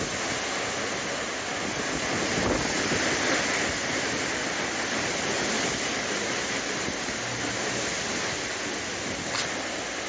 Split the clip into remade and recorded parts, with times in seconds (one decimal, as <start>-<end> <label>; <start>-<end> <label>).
0.0-10.1 recorded